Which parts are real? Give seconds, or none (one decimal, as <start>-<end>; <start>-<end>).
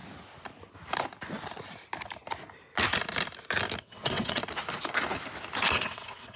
0.0-3.8; 4.4-5.7